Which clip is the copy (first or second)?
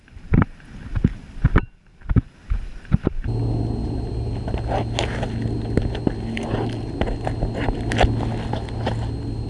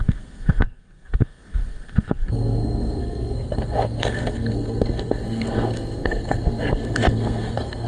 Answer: second